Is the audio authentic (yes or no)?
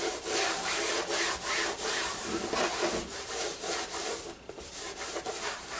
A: yes